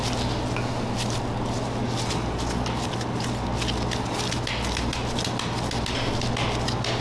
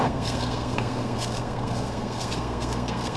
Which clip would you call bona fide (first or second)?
first